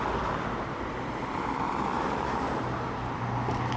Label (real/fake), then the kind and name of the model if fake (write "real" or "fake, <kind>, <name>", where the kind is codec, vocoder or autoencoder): fake, vocoder, BigVGAN v2